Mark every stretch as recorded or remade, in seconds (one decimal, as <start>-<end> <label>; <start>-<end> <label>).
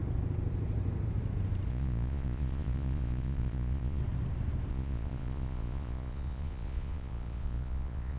0.0-1.7 recorded; 1.7-4.0 remade; 4.0-4.7 recorded; 4.7-8.2 remade